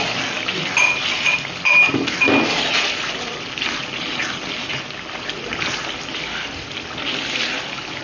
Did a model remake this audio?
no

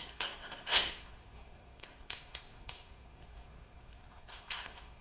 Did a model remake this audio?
yes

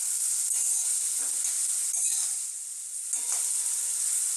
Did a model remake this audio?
no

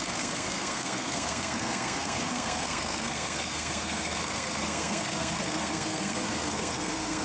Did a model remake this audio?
yes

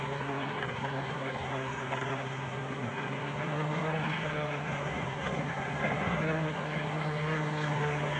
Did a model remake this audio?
yes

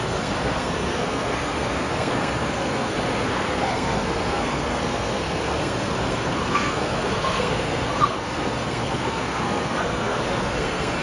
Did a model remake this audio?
yes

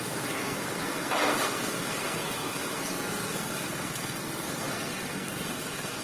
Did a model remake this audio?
yes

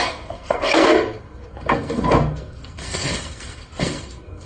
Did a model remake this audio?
yes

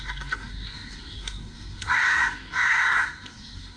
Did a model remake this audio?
yes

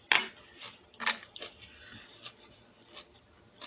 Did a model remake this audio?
no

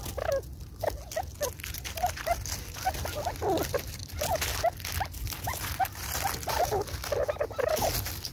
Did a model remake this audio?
no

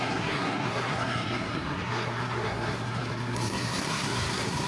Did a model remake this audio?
yes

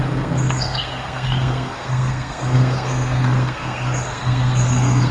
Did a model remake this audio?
yes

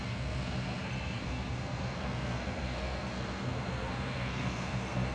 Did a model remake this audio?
yes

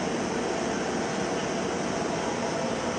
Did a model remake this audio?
no